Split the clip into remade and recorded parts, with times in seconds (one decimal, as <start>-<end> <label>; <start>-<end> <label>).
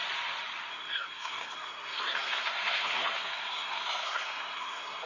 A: 0.0-0.7 recorded; 0.7-5.1 remade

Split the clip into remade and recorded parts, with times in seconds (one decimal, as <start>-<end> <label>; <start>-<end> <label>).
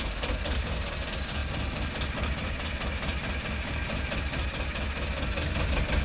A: 0.0-2.4 recorded; 2.4-3.1 remade; 3.1-6.0 recorded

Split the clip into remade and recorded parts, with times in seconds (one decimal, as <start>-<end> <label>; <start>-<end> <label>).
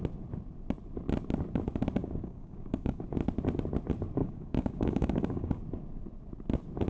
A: 0.0-2.0 recorded; 2.0-3.0 remade; 3.0-4.2 recorded; 4.2-5.6 remade; 5.6-6.9 recorded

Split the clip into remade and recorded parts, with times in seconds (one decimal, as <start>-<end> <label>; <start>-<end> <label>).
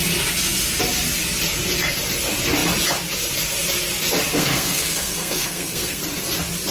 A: 0.0-4.3 recorded; 4.3-6.0 remade; 6.0-6.7 recorded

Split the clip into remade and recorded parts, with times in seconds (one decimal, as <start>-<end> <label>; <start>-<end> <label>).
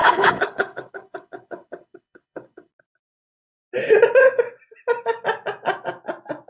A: 0.0-2.7 remade; 2.7-6.5 recorded